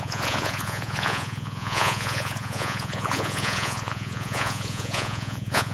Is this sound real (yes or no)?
no